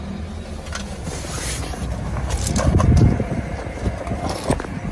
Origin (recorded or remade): recorded